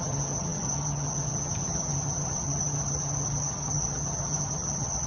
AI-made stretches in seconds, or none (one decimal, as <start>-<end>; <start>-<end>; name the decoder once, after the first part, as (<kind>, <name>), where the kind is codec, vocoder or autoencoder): 0.0-5.1 (vocoder, HiFi-GAN)